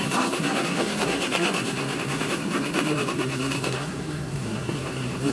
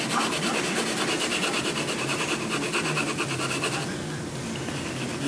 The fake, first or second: first